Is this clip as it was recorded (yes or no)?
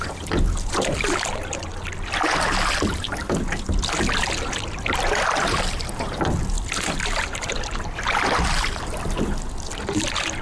yes